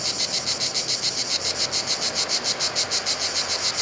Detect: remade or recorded recorded